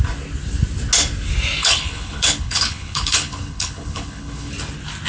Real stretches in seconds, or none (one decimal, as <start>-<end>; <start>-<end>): 0.0-1.6; 4.5-5.1